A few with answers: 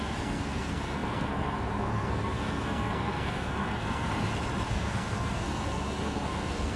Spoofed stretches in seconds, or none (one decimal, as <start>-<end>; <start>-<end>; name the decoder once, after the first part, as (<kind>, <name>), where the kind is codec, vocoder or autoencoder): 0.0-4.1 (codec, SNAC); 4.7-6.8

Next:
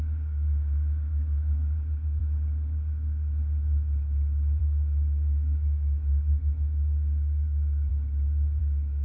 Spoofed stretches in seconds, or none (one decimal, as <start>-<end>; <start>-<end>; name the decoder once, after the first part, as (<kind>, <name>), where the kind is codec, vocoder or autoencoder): 0.0-2.2 (codec, SNAC); 4.6-7.9; 8.6-9.0

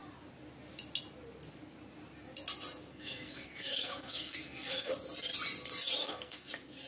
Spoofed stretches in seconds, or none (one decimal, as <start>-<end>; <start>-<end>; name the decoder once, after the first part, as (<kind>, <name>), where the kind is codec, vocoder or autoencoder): 2.9-4.9 (codec, SNAC); 6.0-6.5